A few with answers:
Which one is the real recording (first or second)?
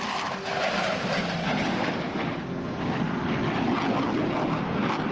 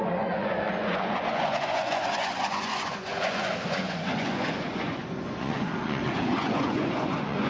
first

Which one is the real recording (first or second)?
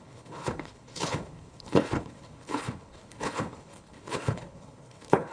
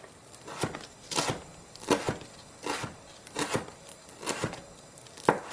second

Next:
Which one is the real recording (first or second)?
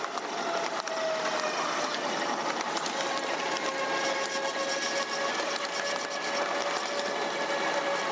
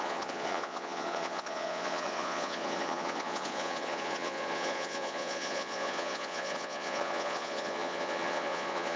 first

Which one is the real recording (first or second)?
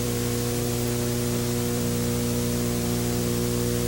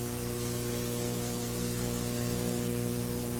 first